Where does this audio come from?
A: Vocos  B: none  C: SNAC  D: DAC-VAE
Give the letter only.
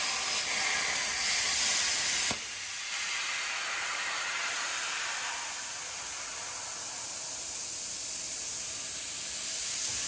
B